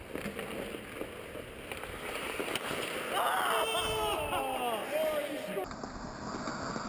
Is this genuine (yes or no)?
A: yes